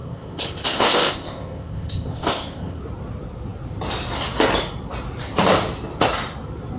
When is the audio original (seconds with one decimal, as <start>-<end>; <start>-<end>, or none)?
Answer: 2.8-6.8